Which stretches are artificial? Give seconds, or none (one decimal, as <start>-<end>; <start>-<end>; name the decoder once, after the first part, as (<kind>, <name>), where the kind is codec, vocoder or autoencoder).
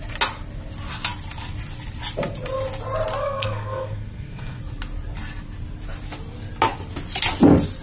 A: 3.2-4.6 (codec, SNAC)